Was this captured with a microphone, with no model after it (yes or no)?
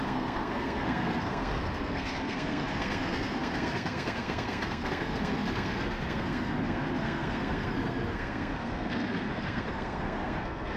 no